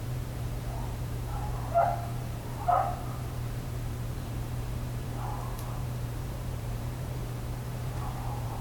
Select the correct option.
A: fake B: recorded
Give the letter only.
A